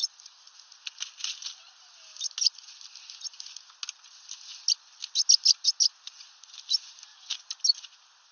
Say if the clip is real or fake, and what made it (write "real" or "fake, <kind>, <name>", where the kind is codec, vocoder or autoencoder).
real